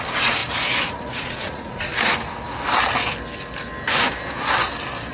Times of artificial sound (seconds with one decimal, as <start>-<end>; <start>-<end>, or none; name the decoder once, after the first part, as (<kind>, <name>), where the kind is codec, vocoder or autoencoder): 0.0-0.4 (vocoder, Vocos); 0.9-1.9